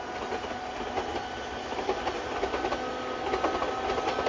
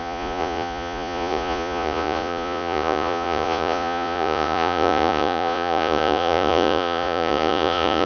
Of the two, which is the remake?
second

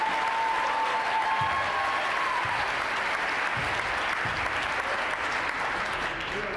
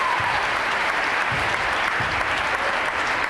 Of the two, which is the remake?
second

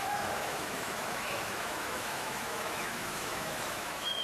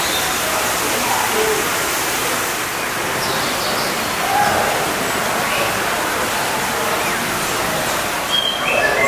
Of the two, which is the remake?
first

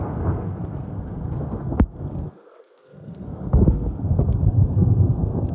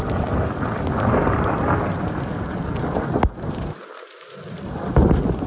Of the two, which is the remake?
first